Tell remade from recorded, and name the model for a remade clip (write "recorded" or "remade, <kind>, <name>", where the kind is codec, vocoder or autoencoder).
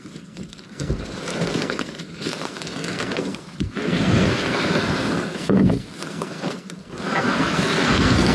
remade, codec, SNAC